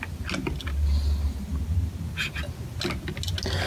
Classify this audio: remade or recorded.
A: recorded